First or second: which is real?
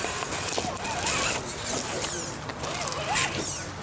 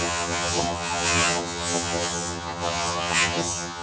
first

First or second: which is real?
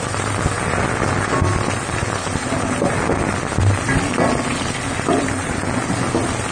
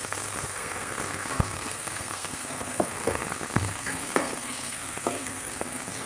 first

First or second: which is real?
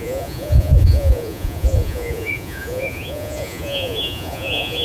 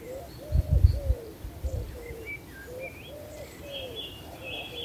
second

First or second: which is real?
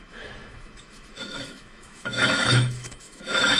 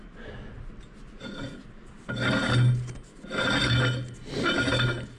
second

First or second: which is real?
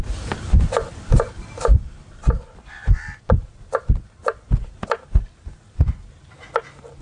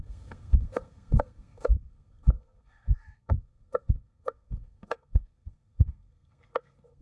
first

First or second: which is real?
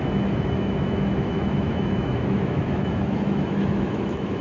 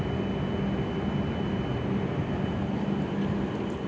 second